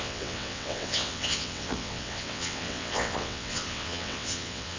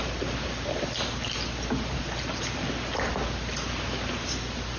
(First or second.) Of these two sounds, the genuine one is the second